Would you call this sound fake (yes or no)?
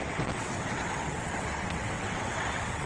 yes